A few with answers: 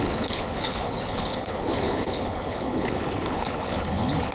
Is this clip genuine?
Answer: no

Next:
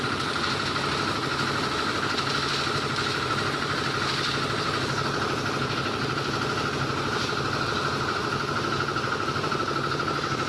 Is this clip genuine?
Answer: yes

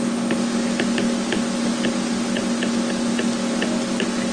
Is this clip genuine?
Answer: yes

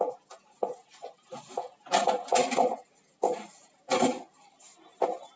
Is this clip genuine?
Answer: yes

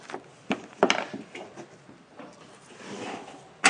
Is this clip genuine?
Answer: yes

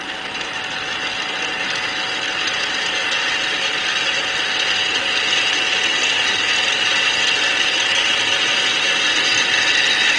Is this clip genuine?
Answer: yes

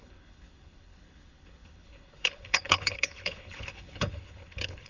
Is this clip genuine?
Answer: no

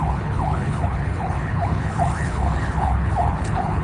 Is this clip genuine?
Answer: no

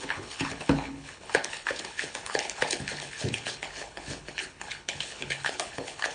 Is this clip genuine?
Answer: no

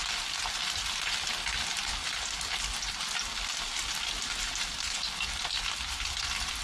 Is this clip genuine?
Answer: yes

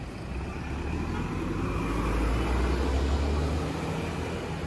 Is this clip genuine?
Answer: yes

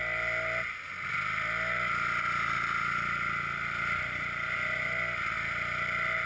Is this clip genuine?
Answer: yes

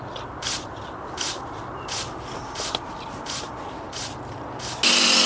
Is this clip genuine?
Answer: yes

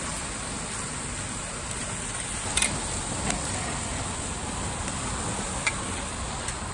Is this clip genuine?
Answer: yes